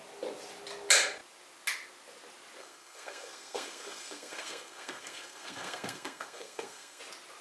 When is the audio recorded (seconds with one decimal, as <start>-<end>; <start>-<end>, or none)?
0.0-2.6; 7.0-7.4